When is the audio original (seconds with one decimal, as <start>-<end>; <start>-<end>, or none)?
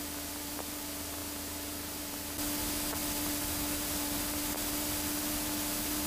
0.0-6.1